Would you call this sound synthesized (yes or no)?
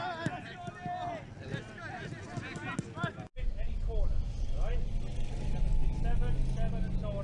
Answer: no